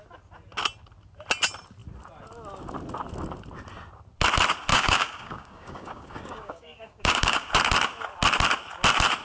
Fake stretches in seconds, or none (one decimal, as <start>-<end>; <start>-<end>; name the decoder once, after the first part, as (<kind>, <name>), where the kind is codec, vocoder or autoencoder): 4.7-7.5 (codec, DAC)